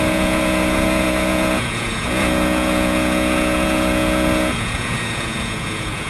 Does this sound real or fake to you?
fake